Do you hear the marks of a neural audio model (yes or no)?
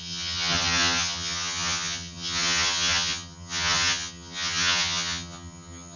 yes